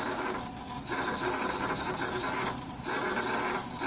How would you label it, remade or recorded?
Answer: recorded